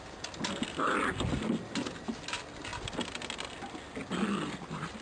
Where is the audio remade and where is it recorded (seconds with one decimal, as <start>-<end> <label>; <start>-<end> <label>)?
0.0-5.0 recorded